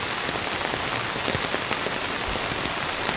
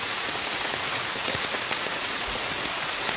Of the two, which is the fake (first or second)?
second